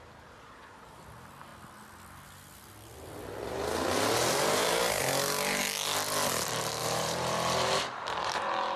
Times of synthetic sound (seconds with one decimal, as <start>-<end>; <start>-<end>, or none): 6.8-8.8